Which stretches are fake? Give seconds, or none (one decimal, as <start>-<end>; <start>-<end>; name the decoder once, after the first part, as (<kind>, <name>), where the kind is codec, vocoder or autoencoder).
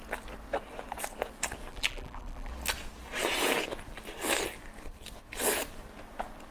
1.7-2.5 (vocoder, BigVGAN v2)